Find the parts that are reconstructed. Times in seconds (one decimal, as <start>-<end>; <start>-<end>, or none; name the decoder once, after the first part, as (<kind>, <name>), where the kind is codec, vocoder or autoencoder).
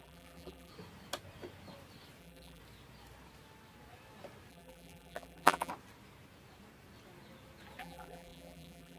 0.0-0.7 (vocoder, BigVGAN v2); 2.2-2.6; 4.5-5.7; 7.8-9.0